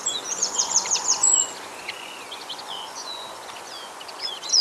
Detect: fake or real fake